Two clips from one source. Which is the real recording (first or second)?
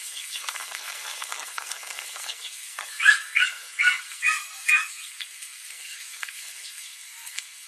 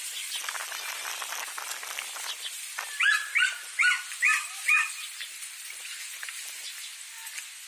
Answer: second